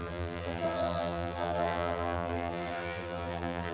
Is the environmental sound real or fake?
fake